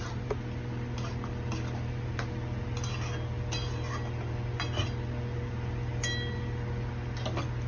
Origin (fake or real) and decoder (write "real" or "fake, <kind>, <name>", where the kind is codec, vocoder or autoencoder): real